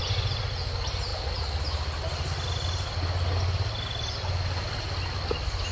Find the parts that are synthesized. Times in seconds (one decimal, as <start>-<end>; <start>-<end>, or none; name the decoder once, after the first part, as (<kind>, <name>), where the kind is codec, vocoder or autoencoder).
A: none